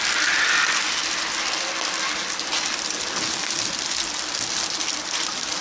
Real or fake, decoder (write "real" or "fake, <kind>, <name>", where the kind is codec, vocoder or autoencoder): real